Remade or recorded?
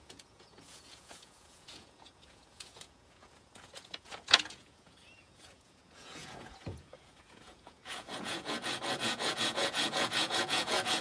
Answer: remade